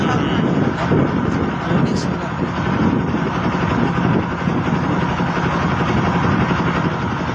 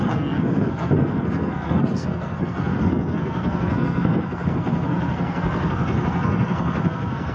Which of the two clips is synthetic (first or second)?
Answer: second